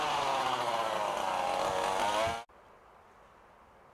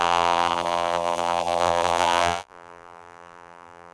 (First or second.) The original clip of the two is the first